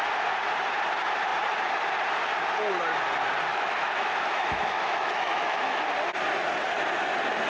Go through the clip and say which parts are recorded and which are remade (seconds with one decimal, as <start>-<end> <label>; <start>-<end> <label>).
0.0-3.5 recorded; 3.5-5.8 remade; 5.8-7.5 recorded